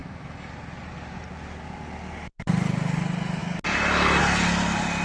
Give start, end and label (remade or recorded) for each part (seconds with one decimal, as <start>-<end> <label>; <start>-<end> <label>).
0.0-0.5 remade; 0.5-5.0 recorded